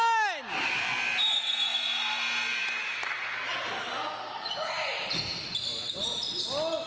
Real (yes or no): yes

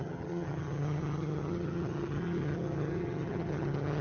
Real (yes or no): no